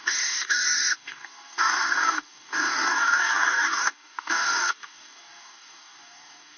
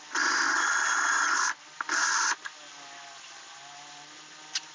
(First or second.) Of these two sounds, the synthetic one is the first